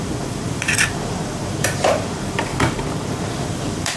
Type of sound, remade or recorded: remade